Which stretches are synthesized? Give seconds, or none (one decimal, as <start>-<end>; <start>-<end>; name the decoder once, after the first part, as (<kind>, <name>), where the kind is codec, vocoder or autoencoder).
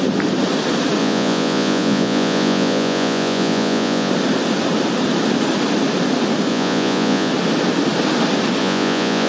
1.0-4.1 (vocoder, Vocos); 6.5-7.3; 8.6-9.3